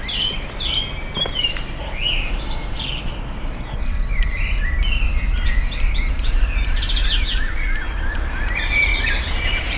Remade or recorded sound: recorded